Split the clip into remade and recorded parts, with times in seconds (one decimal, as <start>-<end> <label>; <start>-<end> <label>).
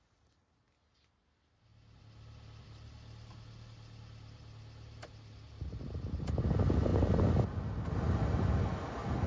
0.0-9.3 recorded